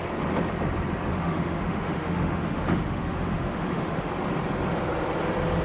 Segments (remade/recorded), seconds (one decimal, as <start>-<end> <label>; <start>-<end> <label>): 0.0-1.1 recorded; 1.1-4.1 remade; 4.1-5.6 recorded